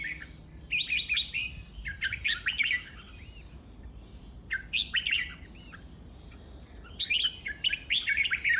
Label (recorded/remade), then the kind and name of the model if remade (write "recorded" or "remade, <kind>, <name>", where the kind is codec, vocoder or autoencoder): remade, vocoder, BigVGAN v2